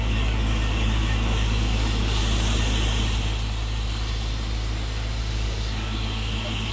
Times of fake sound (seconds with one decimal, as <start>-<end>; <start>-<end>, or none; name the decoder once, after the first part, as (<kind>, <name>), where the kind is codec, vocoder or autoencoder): 0.0-2.2 (codec, DAC); 5.2-6.7